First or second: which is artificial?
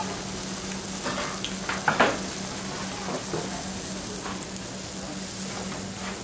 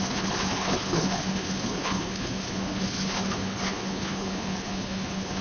second